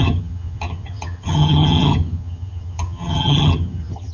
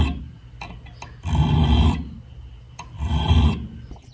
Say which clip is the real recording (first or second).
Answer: second